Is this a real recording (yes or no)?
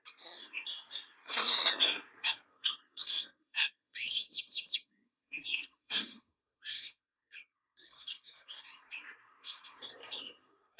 no